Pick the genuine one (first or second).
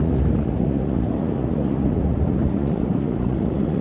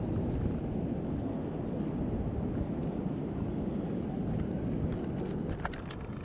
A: second